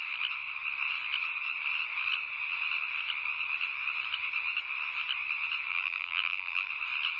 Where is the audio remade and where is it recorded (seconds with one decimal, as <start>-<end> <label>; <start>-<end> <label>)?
0.0-5.7 recorded; 5.7-6.7 remade; 6.7-7.2 recorded